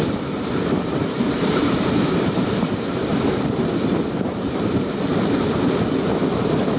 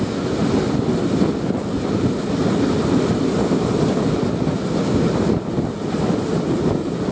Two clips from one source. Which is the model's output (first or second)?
first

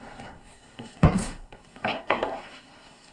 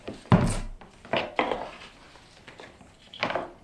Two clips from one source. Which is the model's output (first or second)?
first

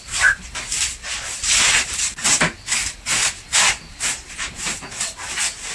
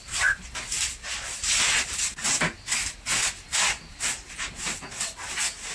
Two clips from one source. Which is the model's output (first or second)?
first